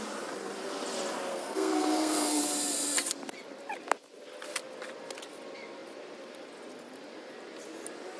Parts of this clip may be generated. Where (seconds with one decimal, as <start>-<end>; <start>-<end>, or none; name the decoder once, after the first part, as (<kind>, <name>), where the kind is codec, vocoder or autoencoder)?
1.3-2.4 (codec, SNAC)